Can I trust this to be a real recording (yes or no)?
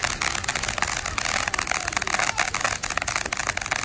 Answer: yes